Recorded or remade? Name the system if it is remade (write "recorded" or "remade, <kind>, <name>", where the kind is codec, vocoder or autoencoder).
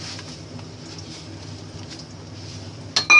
recorded